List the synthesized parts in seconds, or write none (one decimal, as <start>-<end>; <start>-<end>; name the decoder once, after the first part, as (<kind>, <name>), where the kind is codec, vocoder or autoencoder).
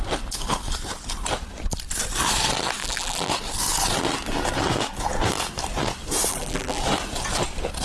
2.8-3.3 (vocoder, BigVGAN v2); 6.3-6.8